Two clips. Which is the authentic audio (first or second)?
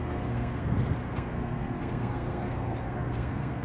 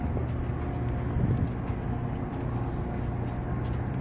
second